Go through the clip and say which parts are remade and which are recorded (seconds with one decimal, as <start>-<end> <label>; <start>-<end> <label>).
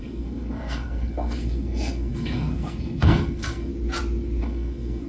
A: 0.0-3.7 remade; 3.7-4.4 recorded; 4.4-5.1 remade